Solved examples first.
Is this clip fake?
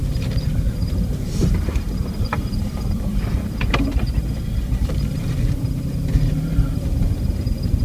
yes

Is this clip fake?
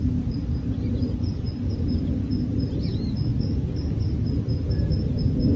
no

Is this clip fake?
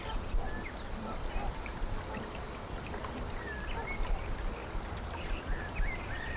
no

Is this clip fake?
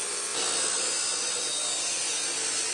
no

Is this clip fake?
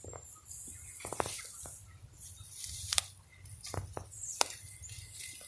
yes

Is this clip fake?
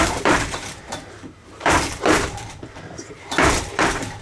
yes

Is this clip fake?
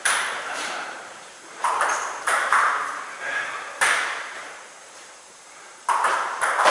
yes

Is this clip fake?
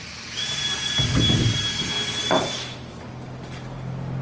no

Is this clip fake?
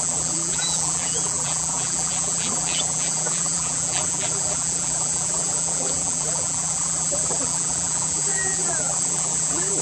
yes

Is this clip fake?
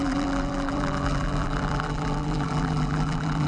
yes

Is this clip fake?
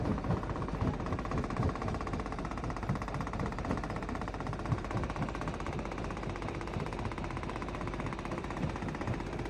yes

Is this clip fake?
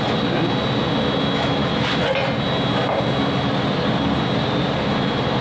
no